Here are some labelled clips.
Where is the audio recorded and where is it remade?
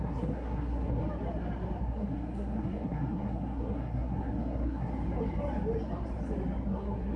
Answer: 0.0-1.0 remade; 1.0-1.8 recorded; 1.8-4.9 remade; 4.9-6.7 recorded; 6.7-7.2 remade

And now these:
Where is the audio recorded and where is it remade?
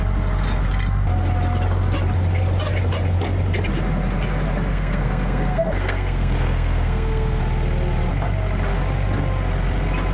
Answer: 0.0-4.7 recorded; 4.7-7.4 remade; 7.4-10.1 recorded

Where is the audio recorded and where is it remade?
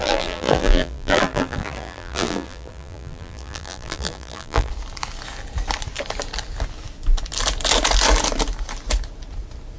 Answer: 0.0-4.7 remade; 4.7-9.8 recorded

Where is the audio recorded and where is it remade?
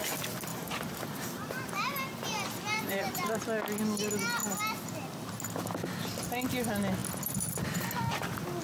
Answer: 0.0-0.5 recorded; 0.5-3.4 remade; 3.4-8.6 recorded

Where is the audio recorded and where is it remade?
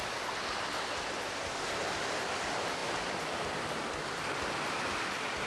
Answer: 0.0-5.5 recorded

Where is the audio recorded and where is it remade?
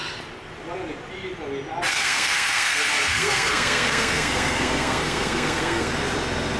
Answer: 0.0-1.9 recorded; 1.9-5.9 remade; 5.9-6.6 recorded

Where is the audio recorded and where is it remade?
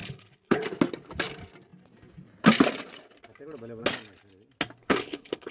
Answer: 0.0-0.6 remade; 0.6-4.8 recorded; 4.8-5.5 remade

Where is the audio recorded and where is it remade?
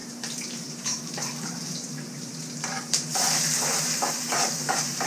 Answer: 0.0-5.1 remade